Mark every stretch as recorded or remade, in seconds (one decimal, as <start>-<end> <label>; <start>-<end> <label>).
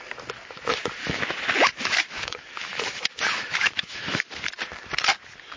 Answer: 0.0-1.0 recorded; 1.0-4.4 remade; 4.4-5.6 recorded